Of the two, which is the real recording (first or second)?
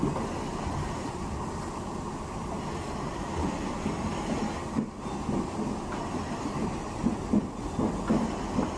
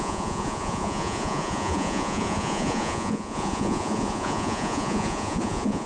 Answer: first